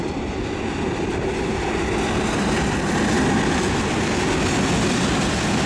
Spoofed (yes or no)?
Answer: no